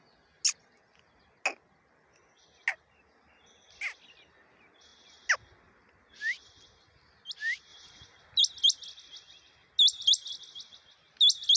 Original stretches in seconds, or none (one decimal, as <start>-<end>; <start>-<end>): 0.0-11.6